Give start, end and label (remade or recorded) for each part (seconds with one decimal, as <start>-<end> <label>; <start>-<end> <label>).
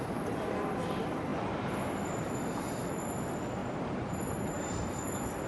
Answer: 0.0-3.6 recorded; 3.6-4.7 remade; 4.7-5.5 recorded